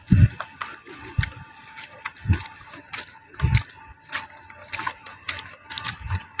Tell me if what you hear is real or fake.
real